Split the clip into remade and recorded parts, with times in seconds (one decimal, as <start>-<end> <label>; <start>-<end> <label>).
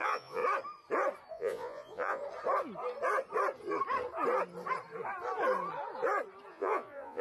0.0-0.4 remade; 0.4-1.3 recorded; 1.3-2.2 remade; 2.2-6.5 recorded; 6.5-7.2 remade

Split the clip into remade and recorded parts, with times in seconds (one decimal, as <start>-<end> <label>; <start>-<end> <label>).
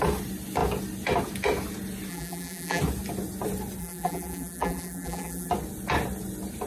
0.0-2.1 recorded; 2.1-2.8 remade; 2.8-3.8 recorded; 3.8-5.5 remade; 5.5-6.7 recorded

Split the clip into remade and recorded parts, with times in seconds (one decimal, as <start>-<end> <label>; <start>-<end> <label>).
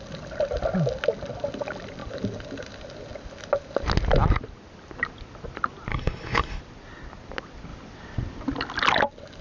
0.0-5.9 recorded; 5.9-6.6 remade; 6.6-9.4 recorded